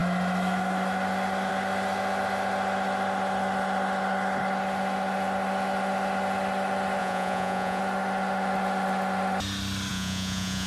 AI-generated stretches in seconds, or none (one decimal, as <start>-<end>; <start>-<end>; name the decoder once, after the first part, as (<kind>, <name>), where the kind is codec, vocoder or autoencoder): 7.0-7.8 (vocoder, Vocos); 9.9-10.7